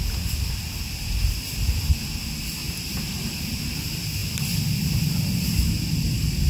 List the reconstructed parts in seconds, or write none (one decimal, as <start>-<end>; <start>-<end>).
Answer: 2.6-3.6